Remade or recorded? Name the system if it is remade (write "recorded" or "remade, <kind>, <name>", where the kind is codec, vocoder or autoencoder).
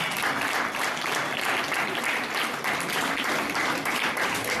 recorded